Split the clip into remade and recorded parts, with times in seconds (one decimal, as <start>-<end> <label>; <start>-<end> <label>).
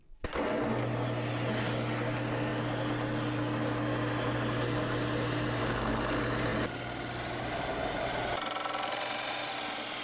0.0-10.0 recorded